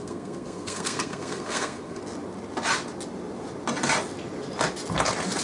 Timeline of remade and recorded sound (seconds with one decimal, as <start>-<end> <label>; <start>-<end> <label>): 0.0-2.0 remade; 2.0-5.4 recorded